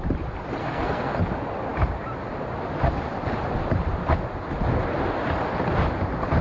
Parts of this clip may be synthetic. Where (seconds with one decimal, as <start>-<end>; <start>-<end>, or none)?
0.6-1.2